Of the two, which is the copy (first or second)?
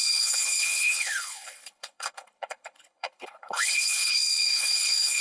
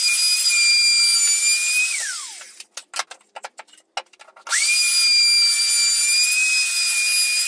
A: first